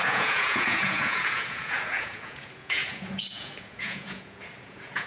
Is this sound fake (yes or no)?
yes